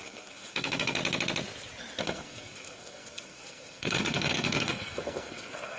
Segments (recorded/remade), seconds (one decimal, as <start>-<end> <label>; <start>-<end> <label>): 0.0-1.0 remade; 1.0-2.0 recorded; 2.0-5.8 remade